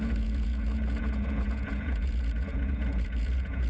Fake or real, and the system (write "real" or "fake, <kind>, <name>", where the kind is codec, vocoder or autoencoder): fake, vocoder, Vocos